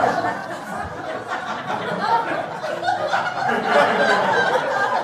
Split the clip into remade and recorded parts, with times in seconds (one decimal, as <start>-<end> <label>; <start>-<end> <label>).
0.0-5.0 recorded